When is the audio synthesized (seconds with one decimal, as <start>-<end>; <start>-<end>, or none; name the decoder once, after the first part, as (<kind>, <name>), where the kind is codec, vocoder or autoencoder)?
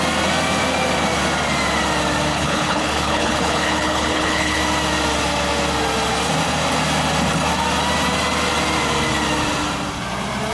2.3-4.6 (codec, HILCodec)